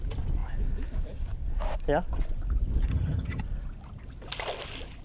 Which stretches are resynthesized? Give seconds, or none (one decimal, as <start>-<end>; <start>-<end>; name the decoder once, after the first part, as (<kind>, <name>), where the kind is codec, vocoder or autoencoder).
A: 2.9-3.4 (vocoder, HiFi-GAN)